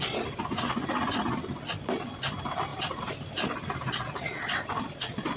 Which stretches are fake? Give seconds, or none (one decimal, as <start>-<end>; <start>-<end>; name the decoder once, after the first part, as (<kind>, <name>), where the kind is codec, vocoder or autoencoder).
none